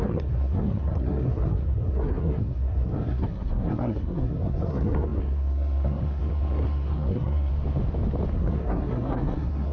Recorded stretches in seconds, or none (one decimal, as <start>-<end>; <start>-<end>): 7.5-8.3